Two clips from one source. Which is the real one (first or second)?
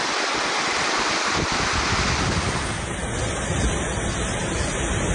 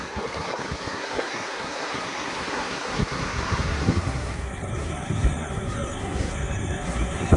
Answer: first